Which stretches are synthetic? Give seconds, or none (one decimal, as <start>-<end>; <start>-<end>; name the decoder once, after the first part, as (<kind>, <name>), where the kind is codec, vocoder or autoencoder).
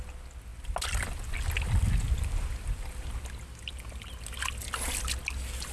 none